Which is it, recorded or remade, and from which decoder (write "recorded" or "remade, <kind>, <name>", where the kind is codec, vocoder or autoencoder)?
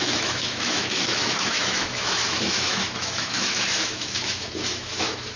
remade, autoencoder, DAC-VAE